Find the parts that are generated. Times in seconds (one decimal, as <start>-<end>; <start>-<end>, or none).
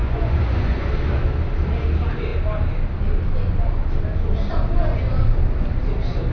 0.0-0.9